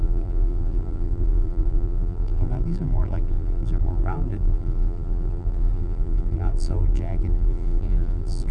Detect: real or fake fake